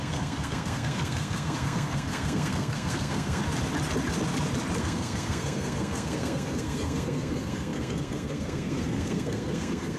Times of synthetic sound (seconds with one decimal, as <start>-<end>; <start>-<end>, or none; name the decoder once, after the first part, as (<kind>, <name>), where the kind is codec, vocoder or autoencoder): 0.0-3.4 (codec, SNAC); 4.8-10.0